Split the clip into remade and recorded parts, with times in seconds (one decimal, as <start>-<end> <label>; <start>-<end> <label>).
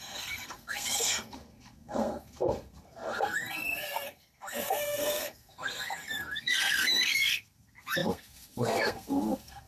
0.0-9.7 remade